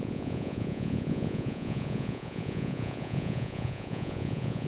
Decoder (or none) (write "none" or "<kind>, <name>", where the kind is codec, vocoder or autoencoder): vocoder, Vocos